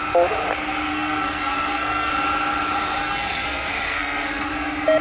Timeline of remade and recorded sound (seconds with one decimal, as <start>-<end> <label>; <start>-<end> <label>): 0.0-0.9 recorded; 0.9-2.1 remade; 2.1-3.0 recorded; 3.0-4.5 remade; 4.5-5.0 recorded